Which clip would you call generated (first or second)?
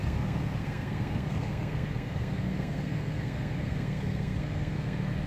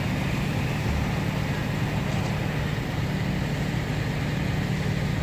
first